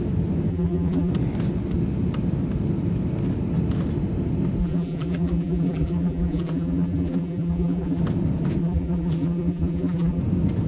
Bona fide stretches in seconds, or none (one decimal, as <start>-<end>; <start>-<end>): 0.0-0.5; 1.1-4.6; 8.0-8.6; 10.2-10.7